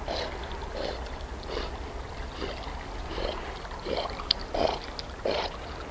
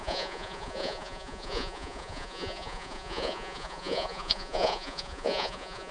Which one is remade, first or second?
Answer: second